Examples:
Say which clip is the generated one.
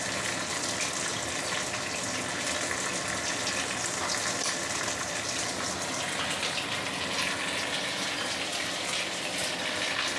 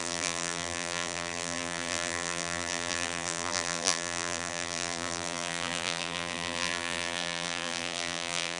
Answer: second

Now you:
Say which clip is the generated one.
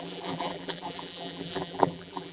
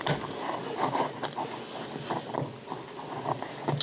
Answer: first